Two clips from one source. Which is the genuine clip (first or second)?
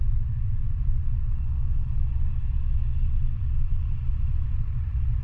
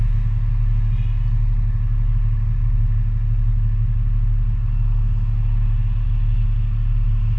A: second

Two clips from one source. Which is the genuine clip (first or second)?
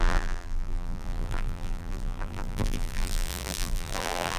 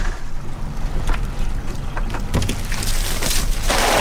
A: second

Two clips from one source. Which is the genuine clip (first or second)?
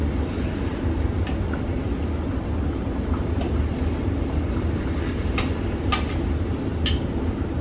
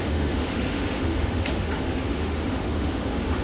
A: first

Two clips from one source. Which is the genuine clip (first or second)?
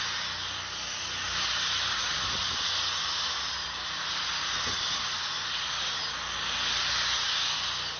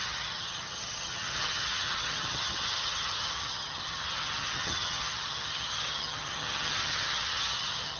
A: first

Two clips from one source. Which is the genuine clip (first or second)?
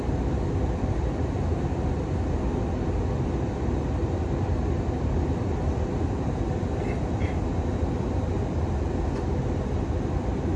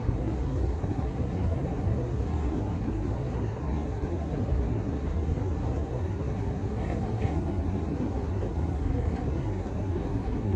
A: first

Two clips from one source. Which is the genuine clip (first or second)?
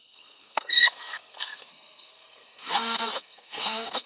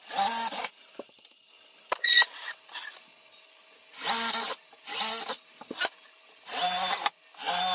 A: second